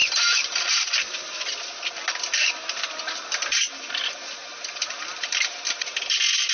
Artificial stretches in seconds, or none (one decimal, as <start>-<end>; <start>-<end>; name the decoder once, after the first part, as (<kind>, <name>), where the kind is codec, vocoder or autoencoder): 0.0-0.8 (vocoder, BigVGAN v2); 4.4-5.9